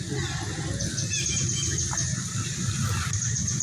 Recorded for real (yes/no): yes